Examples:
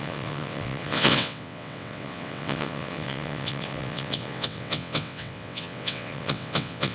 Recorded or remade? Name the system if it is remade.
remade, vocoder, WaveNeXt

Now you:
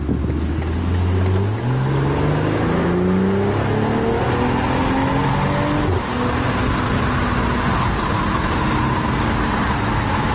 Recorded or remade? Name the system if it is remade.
recorded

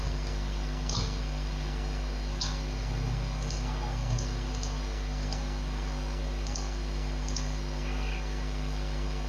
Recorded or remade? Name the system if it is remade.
remade, codec, SNAC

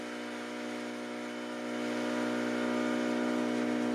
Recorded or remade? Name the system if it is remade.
recorded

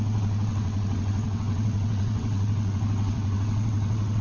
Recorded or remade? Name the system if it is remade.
remade, vocoder, WaveNeXt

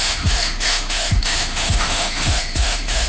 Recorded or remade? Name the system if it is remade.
remade, autoencoder, DAC-VAE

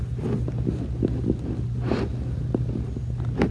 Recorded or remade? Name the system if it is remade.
recorded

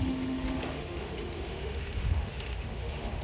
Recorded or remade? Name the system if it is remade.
remade, autoencoder, DAC-VAE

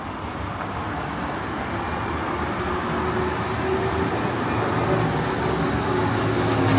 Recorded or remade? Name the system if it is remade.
recorded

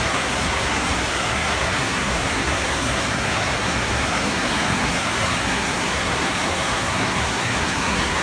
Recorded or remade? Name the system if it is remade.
remade, codec, SNAC